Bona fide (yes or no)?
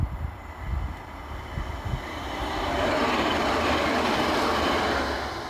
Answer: yes